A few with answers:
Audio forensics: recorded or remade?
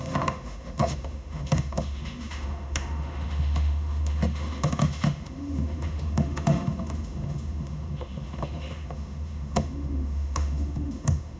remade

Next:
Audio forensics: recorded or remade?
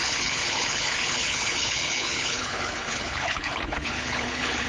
remade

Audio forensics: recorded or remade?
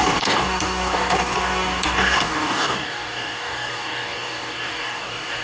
remade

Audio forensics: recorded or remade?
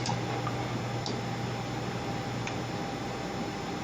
recorded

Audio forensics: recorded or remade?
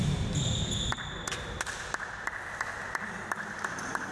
recorded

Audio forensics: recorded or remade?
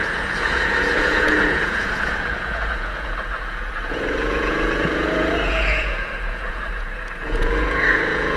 remade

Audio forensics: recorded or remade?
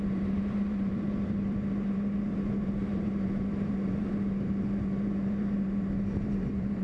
remade